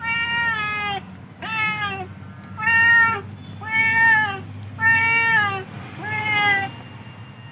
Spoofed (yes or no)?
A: no